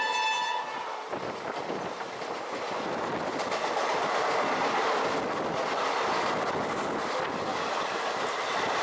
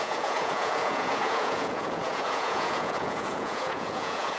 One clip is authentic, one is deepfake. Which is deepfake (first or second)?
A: second